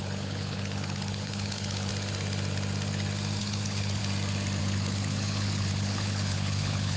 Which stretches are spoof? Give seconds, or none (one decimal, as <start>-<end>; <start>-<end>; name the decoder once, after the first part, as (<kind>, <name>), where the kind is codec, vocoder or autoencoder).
0.0-1.9 (codec, HILCodec); 3.4-4.0; 4.6-7.0